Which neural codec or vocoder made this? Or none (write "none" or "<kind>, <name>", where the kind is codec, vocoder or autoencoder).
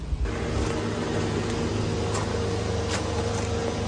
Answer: none